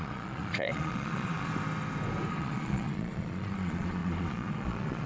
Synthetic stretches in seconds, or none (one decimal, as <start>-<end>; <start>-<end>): 0.0-1.5; 2.3-5.1